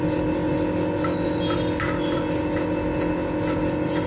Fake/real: real